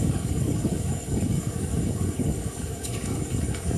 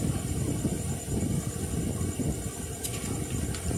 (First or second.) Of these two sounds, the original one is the second